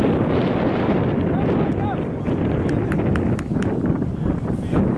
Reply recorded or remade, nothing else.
recorded